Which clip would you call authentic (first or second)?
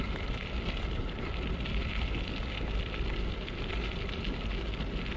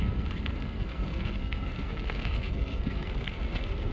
first